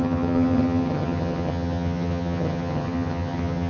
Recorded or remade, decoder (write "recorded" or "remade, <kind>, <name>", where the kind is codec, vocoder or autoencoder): remade, vocoder, HiFi-GAN